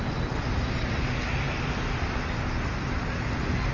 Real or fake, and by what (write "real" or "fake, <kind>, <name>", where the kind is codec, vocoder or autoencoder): real